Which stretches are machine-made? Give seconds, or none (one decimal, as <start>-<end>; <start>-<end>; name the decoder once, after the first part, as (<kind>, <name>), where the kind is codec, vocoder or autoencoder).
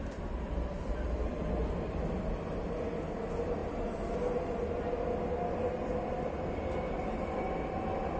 none